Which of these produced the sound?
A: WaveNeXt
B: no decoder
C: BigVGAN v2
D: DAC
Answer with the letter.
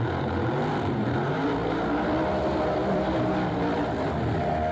C